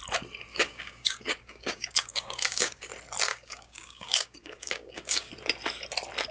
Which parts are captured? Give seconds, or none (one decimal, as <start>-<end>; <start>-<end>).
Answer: 0.0-0.5; 2.9-3.3; 5.3-6.3